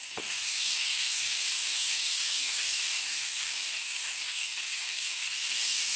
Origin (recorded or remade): remade